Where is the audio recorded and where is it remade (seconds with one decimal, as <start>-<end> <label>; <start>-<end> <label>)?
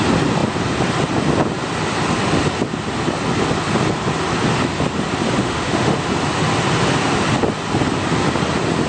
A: 0.0-5.4 recorded; 5.4-6.0 remade; 6.0-8.9 recorded